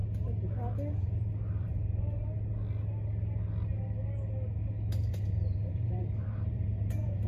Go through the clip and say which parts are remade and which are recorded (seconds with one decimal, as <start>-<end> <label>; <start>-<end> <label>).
0.0-0.9 recorded; 0.9-1.7 remade; 1.7-5.1 recorded; 5.1-7.3 remade